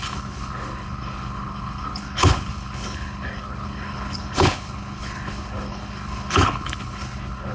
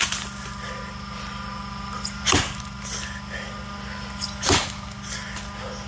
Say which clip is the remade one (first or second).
first